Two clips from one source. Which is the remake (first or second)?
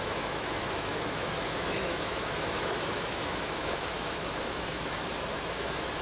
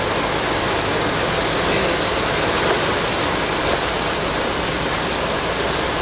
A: first